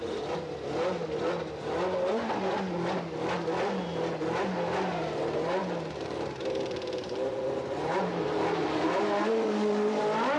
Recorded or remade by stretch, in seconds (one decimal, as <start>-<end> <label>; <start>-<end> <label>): 0.0-5.6 recorded; 5.6-10.0 remade; 10.0-10.4 recorded